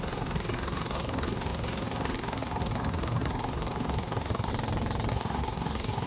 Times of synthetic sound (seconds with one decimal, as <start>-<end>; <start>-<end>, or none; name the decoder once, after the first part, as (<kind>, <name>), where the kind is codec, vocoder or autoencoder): 0.0-4.5 (codec, SNAC); 5.1-6.1